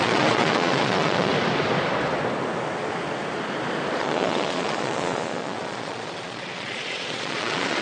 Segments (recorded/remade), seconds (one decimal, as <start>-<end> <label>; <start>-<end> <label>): 0.0-1.3 remade; 1.3-4.0 recorded; 4.0-7.8 remade